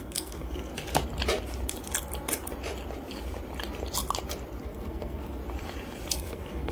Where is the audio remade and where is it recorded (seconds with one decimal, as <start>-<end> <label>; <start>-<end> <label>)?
0.0-0.7 remade; 0.7-4.6 recorded; 4.6-5.4 remade; 5.4-6.1 recorded; 6.1-6.7 remade